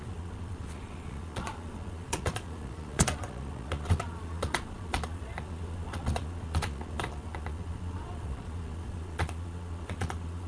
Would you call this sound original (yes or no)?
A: no